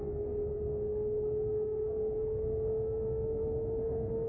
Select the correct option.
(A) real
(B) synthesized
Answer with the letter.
B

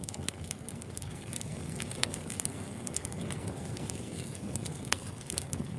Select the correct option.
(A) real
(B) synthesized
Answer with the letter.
B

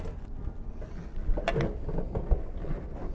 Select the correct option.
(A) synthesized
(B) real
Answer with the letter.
B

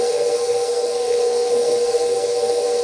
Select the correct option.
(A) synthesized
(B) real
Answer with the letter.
A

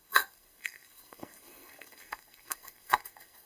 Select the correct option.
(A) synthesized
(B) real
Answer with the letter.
A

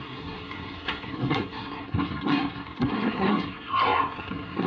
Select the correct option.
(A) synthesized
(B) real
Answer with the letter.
A